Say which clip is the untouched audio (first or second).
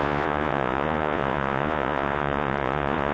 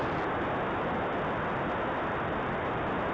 second